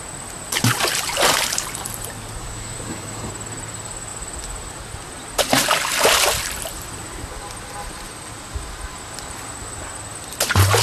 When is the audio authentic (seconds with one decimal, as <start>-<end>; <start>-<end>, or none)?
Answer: 0.0-2.4; 3.3-10.8